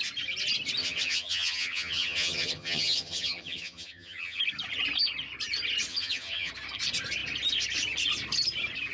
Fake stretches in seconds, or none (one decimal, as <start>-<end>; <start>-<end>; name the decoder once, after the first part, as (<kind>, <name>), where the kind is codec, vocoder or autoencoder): 0.8-4.4 (vocoder, HiFi-GAN); 5.9-6.5